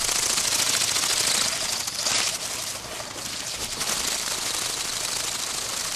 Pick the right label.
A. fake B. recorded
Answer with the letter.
B